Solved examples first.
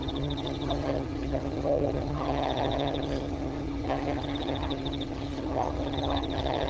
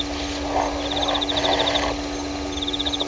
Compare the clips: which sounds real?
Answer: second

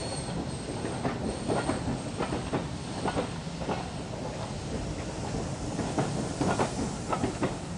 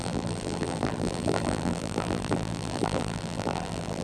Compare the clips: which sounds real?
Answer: first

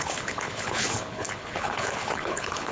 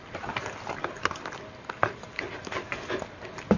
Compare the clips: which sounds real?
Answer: second